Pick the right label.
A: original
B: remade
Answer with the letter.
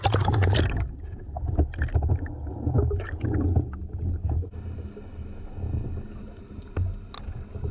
A